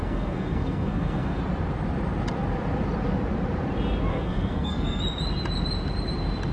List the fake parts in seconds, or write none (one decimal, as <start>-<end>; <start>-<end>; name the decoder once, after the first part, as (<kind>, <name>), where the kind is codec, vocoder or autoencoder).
0.0-1.4 (codec, SNAC); 4.1-5.0